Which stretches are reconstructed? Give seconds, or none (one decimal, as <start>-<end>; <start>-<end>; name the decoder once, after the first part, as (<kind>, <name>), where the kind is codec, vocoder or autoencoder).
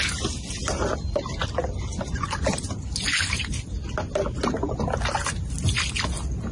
none